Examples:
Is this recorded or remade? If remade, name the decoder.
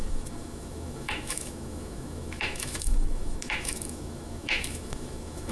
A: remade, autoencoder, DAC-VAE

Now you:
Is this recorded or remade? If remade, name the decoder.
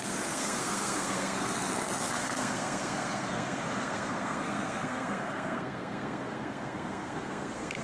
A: remade, codec, SNAC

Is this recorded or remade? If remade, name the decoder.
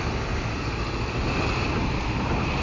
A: recorded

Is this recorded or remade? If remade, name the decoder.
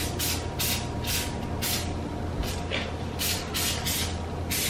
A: recorded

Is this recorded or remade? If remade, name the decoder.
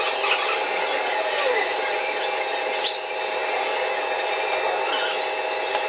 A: recorded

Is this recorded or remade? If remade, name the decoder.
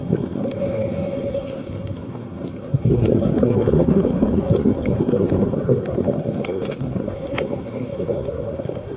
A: remade, codec, SNAC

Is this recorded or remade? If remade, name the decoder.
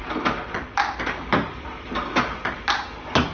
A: recorded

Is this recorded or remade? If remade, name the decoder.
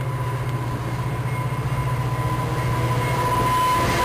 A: recorded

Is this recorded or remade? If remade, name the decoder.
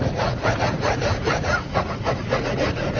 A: remade, vocoder, Vocos